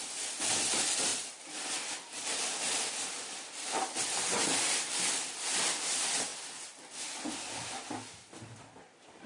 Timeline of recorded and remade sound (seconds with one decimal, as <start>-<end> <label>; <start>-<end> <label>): 0.0-6.3 remade; 6.3-9.3 recorded